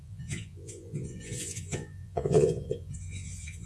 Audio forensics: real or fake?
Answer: fake